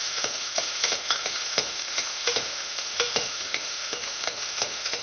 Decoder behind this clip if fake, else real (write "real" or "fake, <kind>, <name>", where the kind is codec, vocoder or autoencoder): fake, autoencoder, DAC-VAE